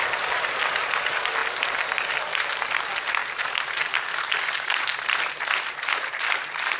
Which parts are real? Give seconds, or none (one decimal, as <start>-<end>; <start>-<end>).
0.0-6.8